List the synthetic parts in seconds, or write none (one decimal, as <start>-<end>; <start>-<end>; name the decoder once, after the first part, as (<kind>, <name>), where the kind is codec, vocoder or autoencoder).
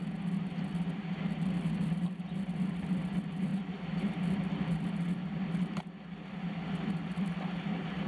none